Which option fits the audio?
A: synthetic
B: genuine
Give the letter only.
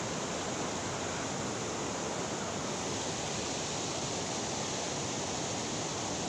B